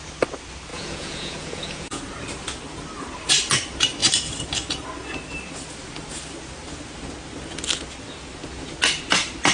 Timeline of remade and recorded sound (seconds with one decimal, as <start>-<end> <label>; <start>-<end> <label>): 0.0-0.7 recorded; 0.7-2.0 remade; 2.0-9.5 recorded